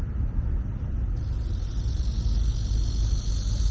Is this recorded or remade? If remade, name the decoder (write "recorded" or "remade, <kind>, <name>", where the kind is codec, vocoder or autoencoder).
recorded